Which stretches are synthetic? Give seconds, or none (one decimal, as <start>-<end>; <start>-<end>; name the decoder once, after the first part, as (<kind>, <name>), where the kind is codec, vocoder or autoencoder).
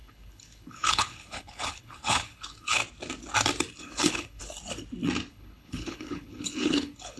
0.0-2.8 (codec, HILCodec); 3.8-4.4; 5.3-7.2